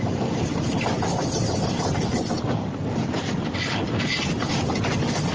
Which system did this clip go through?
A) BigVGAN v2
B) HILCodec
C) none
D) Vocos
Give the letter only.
C